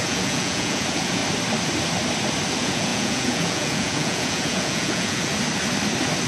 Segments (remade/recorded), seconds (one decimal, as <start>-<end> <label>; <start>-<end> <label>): 0.0-1.2 remade; 1.2-2.5 recorded; 2.5-5.3 remade; 5.3-6.3 recorded

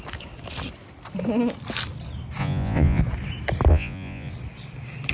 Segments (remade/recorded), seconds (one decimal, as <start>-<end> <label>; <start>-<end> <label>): 0.0-2.4 recorded; 2.4-3.0 remade; 3.0-3.7 recorded; 3.7-4.3 remade; 4.3-5.1 recorded

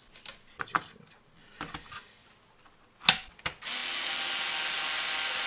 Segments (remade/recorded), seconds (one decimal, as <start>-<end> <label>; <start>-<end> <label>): 0.0-5.5 recorded

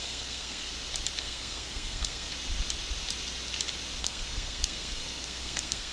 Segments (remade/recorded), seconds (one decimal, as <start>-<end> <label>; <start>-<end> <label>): 0.0-0.7 remade; 0.7-1.2 recorded; 1.2-2.3 remade; 2.3-4.0 recorded; 4.0-5.9 remade

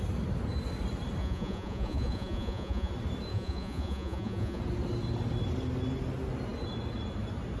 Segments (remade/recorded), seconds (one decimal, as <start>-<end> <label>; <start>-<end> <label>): 0.0-1.2 recorded; 1.2-2.9 remade; 2.9-3.3 recorded; 3.3-4.6 remade; 4.6-7.6 recorded

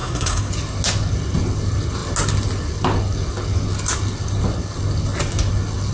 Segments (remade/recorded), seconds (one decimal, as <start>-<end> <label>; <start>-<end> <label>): 0.0-0.5 remade; 0.5-5.9 recorded